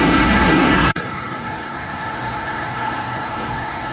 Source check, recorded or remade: remade